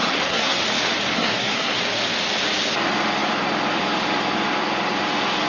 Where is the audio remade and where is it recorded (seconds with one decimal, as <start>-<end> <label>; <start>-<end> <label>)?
0.0-0.6 remade; 0.6-1.1 recorded; 1.1-1.8 remade; 1.8-5.5 recorded

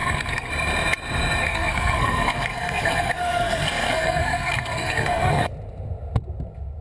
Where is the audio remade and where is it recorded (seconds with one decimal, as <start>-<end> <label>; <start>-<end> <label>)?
0.0-0.5 remade; 0.5-1.4 recorded; 1.4-5.5 remade; 5.5-6.8 recorded

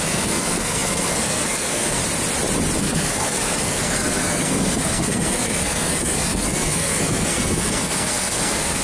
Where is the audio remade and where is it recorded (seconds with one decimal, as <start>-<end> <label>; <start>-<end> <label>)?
0.0-2.0 remade; 2.0-2.8 recorded; 2.8-8.8 remade

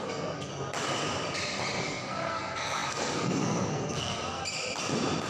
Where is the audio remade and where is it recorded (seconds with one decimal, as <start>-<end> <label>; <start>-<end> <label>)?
0.0-0.5 remade; 0.5-1.8 recorded; 1.8-4.4 remade; 4.4-5.3 recorded

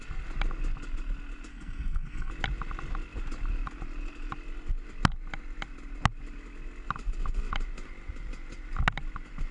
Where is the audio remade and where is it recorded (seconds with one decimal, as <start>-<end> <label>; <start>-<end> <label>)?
0.0-1.5 recorded; 1.5-2.3 remade; 2.3-9.5 recorded

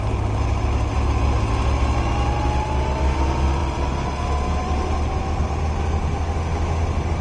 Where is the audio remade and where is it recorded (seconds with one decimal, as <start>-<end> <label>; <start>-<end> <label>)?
0.0-7.2 recorded

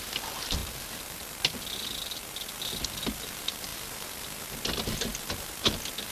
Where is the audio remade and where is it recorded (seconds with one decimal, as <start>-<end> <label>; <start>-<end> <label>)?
0.0-6.1 recorded